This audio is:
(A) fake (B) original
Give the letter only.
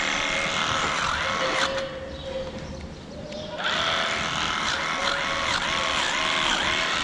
B